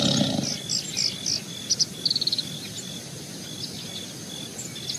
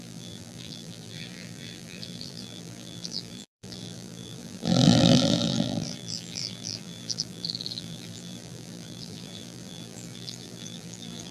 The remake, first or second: second